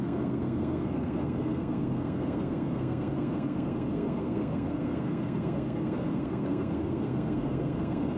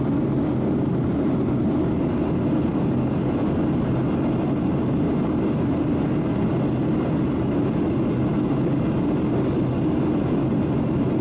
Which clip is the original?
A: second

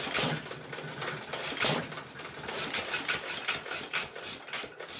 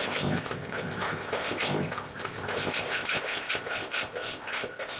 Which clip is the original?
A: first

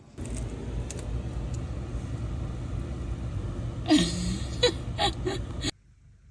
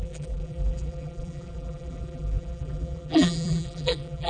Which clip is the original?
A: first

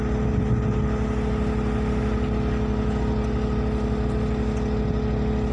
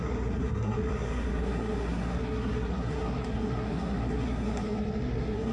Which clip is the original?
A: first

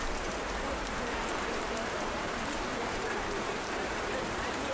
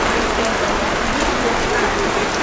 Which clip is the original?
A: second